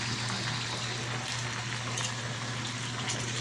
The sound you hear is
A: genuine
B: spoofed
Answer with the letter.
A